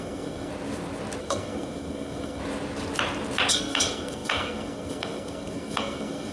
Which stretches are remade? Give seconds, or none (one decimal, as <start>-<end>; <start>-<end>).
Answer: 0.0-0.5; 1.2-2.4; 3.5-6.3